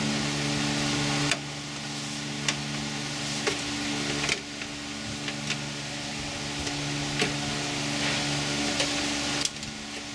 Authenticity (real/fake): real